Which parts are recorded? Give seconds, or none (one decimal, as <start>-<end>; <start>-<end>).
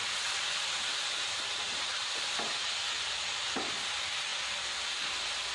0.0-5.5